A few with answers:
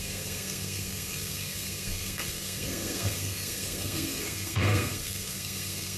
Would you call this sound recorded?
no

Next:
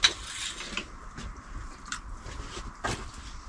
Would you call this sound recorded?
yes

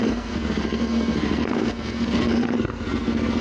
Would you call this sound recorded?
no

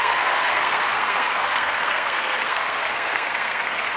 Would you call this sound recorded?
no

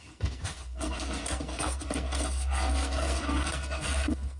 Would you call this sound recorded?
no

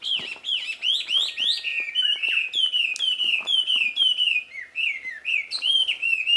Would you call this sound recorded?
yes